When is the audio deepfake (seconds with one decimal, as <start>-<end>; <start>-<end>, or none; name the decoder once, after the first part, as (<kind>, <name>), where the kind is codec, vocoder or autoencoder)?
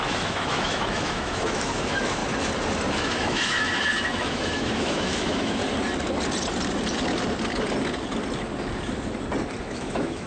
0.0-2.2 (autoencoder, DAC-VAE); 2.9-5.6; 9.6-10.3